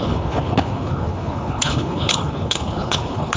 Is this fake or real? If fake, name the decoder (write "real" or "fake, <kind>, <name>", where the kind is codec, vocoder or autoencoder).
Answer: fake, codec, HILCodec